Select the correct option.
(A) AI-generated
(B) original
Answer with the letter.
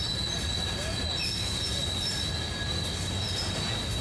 B